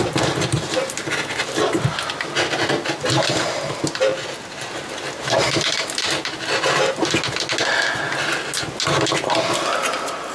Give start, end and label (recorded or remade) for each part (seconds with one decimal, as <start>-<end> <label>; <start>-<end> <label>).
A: 0.0-10.3 recorded